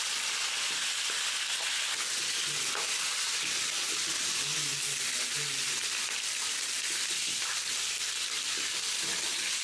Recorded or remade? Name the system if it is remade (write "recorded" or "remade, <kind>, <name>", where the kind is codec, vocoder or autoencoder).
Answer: recorded